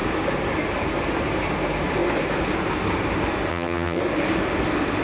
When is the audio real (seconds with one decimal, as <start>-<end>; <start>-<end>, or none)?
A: 0.0-3.5; 4.0-5.0